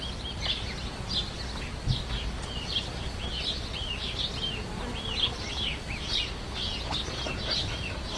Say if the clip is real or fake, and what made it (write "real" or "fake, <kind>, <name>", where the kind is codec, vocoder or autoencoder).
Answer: real